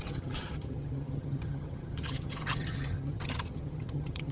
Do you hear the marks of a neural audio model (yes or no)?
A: yes